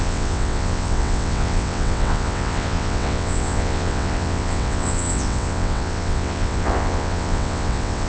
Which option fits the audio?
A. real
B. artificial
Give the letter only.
B